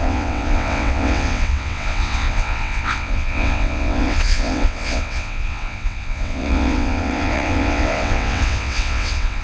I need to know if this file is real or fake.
fake